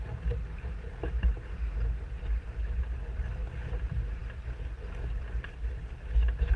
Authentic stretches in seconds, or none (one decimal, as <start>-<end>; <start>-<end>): 0.0-6.6